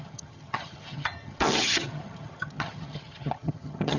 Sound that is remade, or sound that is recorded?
remade